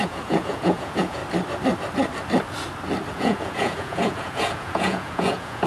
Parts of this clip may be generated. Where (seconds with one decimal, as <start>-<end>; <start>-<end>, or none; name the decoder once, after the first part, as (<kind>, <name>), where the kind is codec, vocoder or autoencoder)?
0.0-1.2 (vocoder, Vocos); 3.1-5.7